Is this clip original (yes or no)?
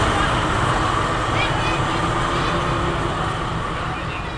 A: yes